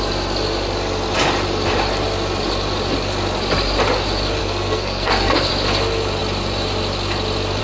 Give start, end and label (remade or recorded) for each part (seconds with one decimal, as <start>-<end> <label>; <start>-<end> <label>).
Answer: 0.0-4.4 recorded; 4.4-5.5 remade; 5.5-7.6 recorded